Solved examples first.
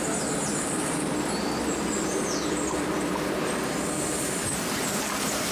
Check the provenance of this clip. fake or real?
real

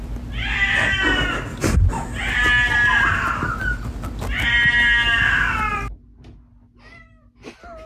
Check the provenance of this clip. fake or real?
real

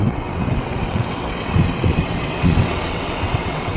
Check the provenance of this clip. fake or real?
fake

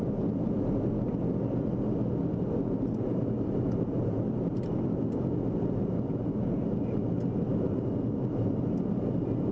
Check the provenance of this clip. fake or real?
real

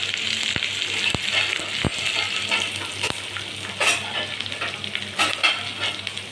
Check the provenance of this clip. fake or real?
real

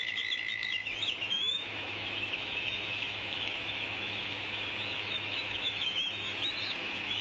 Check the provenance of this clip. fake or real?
fake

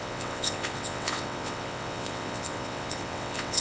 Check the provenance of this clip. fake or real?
fake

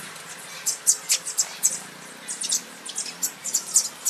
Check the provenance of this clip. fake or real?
real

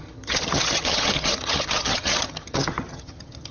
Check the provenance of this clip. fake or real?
fake